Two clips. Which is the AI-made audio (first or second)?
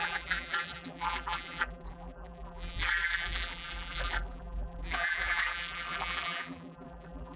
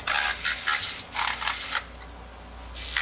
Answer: first